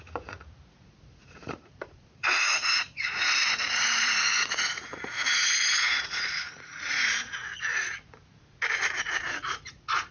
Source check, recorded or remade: remade